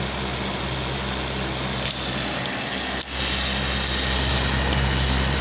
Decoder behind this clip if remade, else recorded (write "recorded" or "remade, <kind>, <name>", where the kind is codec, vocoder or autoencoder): recorded